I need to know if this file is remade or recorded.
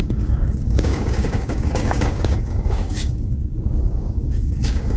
remade